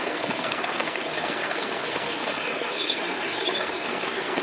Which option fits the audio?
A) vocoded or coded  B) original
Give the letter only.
A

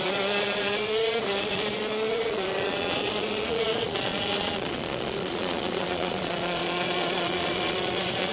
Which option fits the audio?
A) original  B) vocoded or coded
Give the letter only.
B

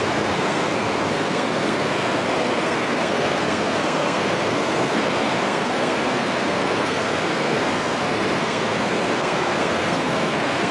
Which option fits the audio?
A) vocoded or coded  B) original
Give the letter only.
A